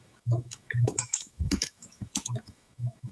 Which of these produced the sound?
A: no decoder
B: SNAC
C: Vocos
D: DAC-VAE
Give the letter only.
D